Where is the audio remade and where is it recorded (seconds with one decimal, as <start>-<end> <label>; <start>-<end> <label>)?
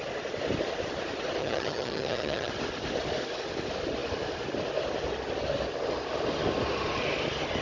0.0-1.4 recorded; 1.4-2.5 remade; 2.5-7.6 recorded